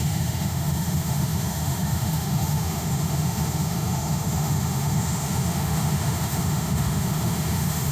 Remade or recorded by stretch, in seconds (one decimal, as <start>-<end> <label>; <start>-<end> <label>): 0.0-7.9 remade